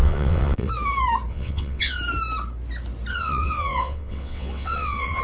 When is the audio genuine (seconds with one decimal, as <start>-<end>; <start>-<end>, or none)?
0.7-1.3; 2.0-3.1